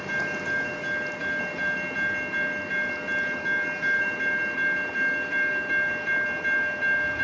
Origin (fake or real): real